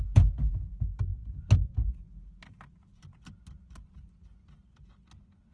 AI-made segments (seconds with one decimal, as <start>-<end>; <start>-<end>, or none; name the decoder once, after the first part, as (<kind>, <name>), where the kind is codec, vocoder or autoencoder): none